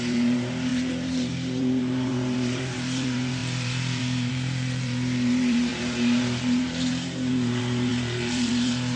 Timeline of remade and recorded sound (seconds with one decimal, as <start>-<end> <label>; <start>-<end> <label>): 0.0-9.0 remade